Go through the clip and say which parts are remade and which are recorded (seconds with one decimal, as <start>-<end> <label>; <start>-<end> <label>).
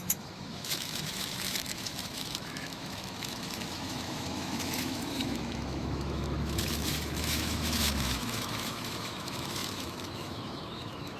0.0-11.2 remade